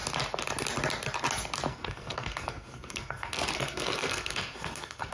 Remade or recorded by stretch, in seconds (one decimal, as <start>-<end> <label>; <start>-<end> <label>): 0.0-1.7 recorded; 1.7-5.1 remade